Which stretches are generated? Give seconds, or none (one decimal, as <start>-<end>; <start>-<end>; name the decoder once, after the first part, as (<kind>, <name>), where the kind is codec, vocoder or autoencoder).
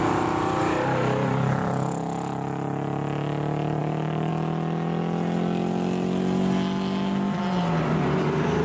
3.8-4.3 (codec, DAC)